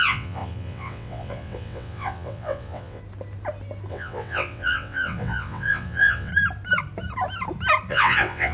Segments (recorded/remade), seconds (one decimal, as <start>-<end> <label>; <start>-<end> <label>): 0.0-3.0 remade; 3.0-3.9 recorded; 3.9-6.3 remade; 6.3-7.9 recorded; 7.9-8.5 remade

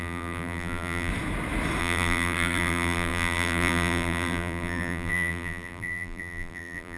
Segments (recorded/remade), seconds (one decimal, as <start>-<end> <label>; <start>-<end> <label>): 0.0-1.1 remade; 1.1-1.8 recorded; 1.8-7.0 remade

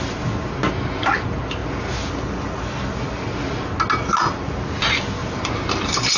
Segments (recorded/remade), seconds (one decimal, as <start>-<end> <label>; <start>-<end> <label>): 0.0-5.2 recorded; 5.2-6.2 remade